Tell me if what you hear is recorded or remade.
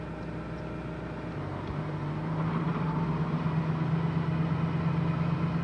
recorded